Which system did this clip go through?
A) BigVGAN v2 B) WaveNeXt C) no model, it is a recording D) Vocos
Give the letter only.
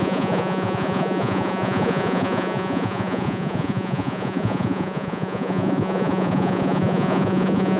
D